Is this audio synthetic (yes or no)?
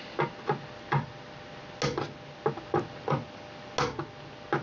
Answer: no